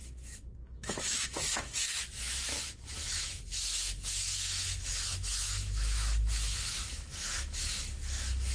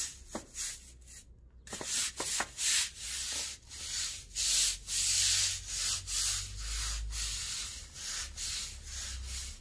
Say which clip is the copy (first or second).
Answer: first